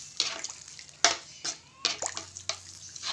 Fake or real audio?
real